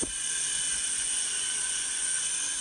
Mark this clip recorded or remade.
remade